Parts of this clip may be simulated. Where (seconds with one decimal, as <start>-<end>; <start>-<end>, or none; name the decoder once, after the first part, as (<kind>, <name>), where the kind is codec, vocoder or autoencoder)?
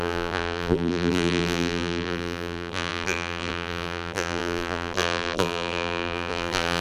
0.0-6.8 (vocoder, BigVGAN v2)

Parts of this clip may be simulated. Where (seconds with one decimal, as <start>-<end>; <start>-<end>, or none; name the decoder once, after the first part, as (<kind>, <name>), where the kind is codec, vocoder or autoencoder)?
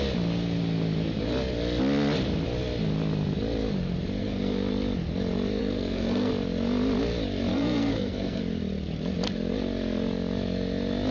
4.2-4.7 (codec, SNAC); 5.6-6.3; 7.5-8.4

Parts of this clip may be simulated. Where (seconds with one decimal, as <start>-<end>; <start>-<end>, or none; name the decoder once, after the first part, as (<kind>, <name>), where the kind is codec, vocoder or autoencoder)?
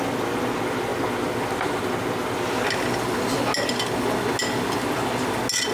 none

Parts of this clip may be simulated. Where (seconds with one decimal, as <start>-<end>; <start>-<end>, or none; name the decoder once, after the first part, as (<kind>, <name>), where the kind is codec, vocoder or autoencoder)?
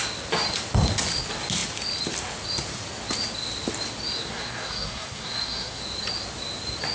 4.3-5.8 (codec, SNAC)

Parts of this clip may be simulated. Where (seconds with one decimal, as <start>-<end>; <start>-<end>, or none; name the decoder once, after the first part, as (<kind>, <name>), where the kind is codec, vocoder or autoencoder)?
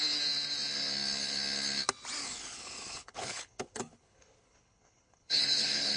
2.2-6.0 (codec, HILCodec)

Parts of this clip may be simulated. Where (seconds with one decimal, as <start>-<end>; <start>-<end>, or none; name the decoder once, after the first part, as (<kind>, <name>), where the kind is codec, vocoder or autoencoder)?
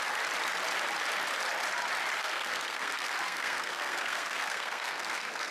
2.2-5.5 (codec, SNAC)